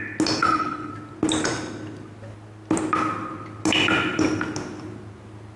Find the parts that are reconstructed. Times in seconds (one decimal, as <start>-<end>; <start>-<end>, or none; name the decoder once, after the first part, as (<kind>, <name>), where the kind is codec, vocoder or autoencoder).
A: 0.4-0.9 (codec, HILCodec)